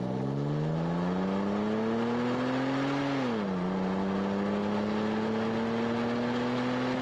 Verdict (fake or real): real